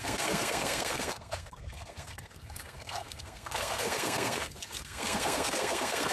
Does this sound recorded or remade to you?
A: remade